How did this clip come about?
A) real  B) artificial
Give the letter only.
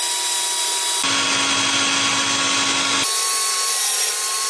A